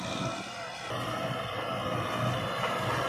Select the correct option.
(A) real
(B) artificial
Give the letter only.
A